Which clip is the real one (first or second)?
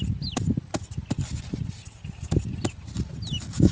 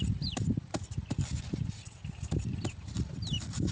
first